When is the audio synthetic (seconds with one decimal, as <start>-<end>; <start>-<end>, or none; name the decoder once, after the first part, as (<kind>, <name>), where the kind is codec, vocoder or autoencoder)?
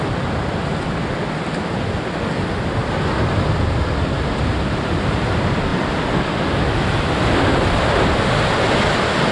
none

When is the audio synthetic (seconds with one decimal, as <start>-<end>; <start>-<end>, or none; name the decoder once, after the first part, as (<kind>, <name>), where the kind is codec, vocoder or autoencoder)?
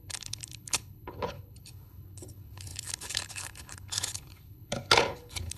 0.0-5.6 (codec, HILCodec)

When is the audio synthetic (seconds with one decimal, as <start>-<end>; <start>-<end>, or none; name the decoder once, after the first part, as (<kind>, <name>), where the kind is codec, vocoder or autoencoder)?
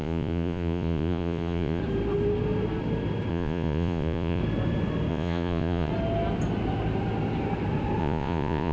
0.0-1.8 (vocoder, Vocos); 3.3-4.4; 5.1-5.9; 8.0-8.7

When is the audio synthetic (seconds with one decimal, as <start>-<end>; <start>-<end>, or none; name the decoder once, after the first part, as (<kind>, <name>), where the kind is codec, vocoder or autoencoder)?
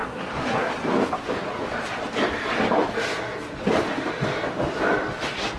0.0-0.7 (codec, SNAC)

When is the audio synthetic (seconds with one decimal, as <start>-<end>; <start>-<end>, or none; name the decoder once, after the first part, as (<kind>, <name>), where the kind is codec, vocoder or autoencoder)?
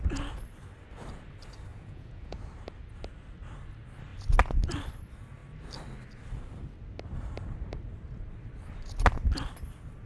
1.7-2.4 (vocoder, Vocos)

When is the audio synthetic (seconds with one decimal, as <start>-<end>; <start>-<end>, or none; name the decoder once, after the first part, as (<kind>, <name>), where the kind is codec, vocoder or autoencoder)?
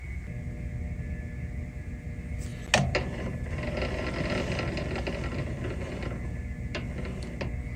none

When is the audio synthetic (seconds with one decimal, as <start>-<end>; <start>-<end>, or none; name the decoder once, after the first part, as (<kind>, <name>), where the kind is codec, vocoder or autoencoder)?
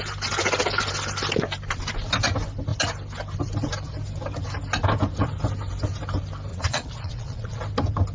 6.5-7.6 (vocoder, Vocos)